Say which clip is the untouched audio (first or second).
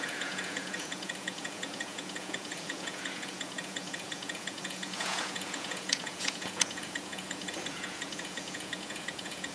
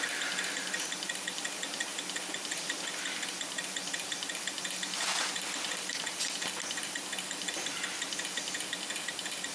second